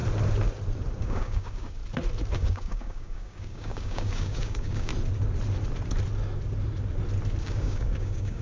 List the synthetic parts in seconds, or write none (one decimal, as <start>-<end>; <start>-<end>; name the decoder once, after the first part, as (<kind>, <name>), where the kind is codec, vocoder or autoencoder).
1.0-1.8 (codec, DAC); 2.3-4.9; 7.4-8.4